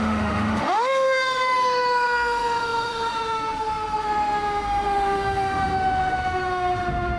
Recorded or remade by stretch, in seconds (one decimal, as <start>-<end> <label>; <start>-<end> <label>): 0.0-7.2 remade